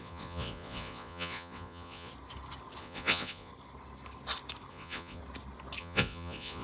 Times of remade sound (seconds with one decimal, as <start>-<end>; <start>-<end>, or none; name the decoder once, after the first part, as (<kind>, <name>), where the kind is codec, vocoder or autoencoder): 0.0-2.1 (vocoder, Vocos); 2.8-3.5; 4.7-5.2; 5.8-6.6